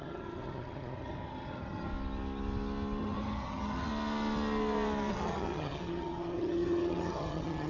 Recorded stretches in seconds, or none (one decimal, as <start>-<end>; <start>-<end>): 1.9-3.0; 3.9-5.1